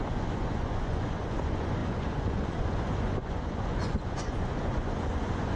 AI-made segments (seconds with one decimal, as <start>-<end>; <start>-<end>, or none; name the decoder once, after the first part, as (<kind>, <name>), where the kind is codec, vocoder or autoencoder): 0.0-5.6 (vocoder, Vocos)